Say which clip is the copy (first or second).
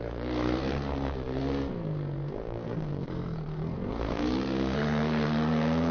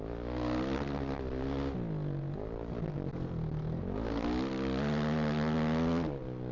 first